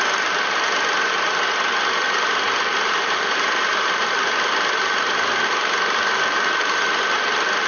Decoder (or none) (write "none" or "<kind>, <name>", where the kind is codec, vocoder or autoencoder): none